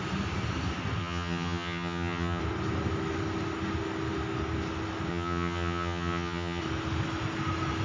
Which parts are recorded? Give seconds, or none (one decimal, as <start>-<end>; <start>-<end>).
0.0-1.0; 2.4-5.1; 6.6-7.8